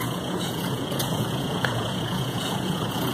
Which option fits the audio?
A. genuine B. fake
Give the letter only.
B